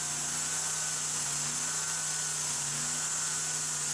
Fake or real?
real